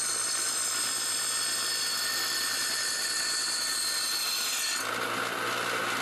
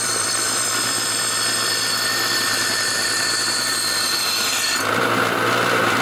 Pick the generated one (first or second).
second